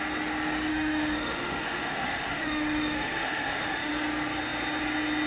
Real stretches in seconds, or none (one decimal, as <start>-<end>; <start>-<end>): 0.0-0.7; 3.9-5.3